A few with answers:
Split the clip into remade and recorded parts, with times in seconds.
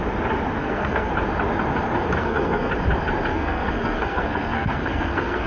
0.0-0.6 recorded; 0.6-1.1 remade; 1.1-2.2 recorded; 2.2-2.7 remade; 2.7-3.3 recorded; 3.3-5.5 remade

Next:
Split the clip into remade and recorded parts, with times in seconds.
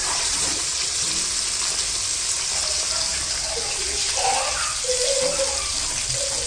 0.0-1.1 remade; 1.1-6.5 recorded